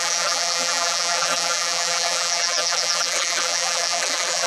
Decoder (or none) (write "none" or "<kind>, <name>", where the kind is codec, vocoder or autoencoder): vocoder, BigVGAN v2